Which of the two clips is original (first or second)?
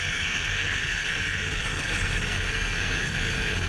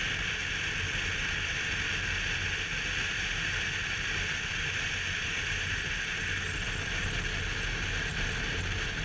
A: second